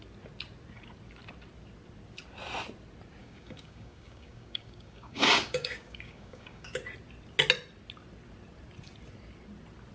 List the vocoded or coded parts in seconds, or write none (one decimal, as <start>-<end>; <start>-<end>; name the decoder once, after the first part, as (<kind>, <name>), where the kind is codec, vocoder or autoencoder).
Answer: 3.2-6.8 (codec, DAC)